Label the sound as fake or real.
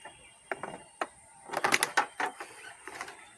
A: real